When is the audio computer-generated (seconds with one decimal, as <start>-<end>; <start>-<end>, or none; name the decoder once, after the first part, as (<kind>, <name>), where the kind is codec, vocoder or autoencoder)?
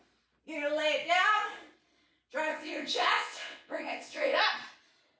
2.5-4.4 (vocoder, WaveNeXt)